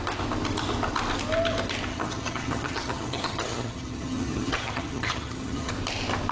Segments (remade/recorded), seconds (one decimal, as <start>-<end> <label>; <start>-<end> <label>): 0.0-1.9 recorded; 1.9-5.7 remade; 5.7-6.3 recorded